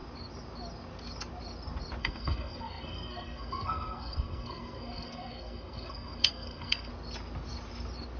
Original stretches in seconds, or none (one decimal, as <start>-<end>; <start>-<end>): 0.0-2.0; 6.9-8.2